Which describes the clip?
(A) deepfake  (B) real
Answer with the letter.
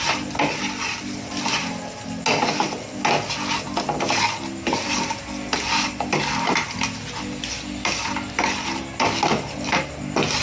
B